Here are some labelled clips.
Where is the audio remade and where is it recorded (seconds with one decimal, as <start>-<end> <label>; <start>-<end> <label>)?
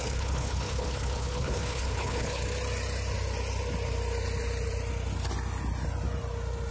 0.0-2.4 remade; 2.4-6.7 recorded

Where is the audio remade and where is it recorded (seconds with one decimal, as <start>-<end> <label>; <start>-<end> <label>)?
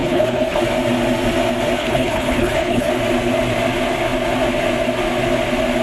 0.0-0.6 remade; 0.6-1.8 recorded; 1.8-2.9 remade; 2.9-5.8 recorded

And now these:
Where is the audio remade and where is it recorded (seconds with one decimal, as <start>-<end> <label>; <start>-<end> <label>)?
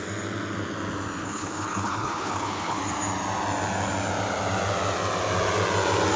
0.0-1.2 recorded; 1.2-2.8 remade; 2.8-6.2 recorded